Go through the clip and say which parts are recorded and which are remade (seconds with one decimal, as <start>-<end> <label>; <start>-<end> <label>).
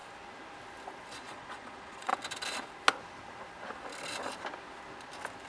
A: 0.0-1.1 recorded; 1.1-2.1 remade; 2.1-5.5 recorded